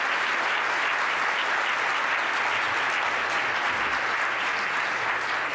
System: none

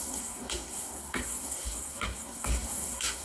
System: codec, SNAC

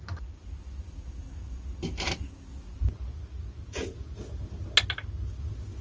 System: none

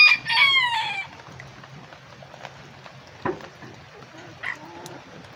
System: none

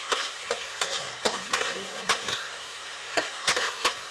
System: codec, SNAC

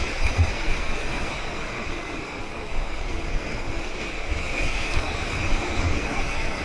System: codec, SNAC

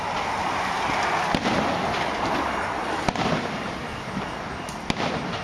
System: none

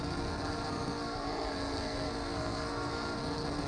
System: codec, SNAC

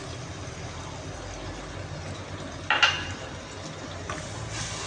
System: none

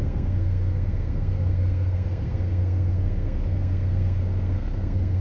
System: codec, SNAC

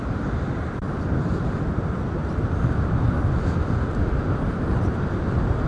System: none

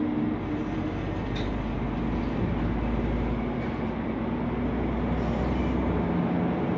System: none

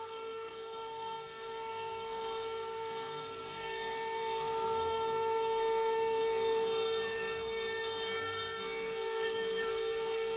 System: codec, SNAC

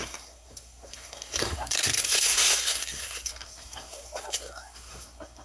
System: codec, SNAC